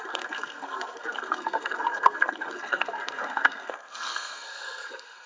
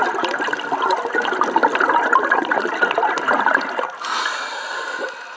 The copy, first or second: first